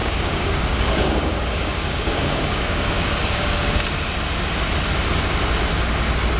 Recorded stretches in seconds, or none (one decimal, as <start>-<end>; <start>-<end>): 3.8-6.4